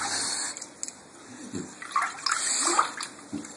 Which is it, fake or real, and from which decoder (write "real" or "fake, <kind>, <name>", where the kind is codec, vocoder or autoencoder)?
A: real